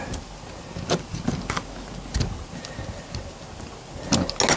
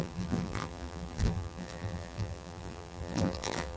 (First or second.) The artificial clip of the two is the second